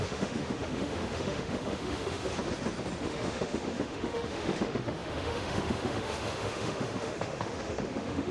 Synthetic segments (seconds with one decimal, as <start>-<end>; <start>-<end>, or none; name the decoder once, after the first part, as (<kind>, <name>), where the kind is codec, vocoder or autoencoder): 0.0-2.3 (autoencoder, DAC-VAE); 3.0-8.3